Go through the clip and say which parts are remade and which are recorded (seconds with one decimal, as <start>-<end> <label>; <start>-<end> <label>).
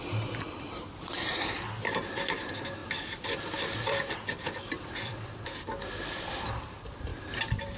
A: 0.0-2.8 recorded; 2.8-5.6 remade; 5.6-7.1 recorded; 7.1-7.8 remade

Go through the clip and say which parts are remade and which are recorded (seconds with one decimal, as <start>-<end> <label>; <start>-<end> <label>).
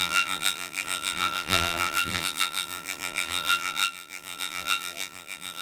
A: 0.0-5.6 remade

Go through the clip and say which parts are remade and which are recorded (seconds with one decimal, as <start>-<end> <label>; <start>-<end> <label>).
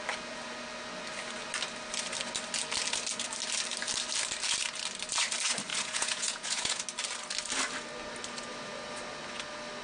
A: 0.0-5.7 recorded; 5.7-6.8 remade; 6.8-9.8 recorded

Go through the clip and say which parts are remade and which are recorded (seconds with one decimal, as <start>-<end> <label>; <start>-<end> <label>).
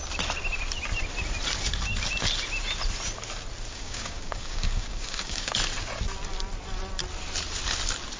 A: 0.0-3.7 recorded; 3.7-5.5 remade; 5.5-8.2 recorded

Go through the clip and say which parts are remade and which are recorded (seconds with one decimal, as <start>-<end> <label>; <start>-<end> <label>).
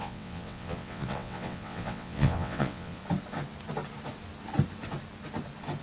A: 0.0-3.0 remade; 3.0-5.8 recorded